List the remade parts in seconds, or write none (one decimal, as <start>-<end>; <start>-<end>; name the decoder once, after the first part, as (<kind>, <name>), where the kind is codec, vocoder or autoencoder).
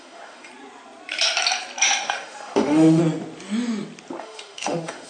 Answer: 0.0-0.5 (autoencoder, DAC-VAE); 2.0-3.0; 4.2-5.1